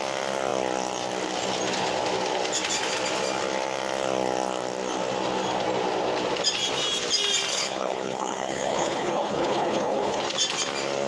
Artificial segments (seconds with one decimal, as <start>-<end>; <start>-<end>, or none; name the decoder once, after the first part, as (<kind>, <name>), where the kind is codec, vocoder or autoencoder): 7.5-10.2 (codec, HILCodec)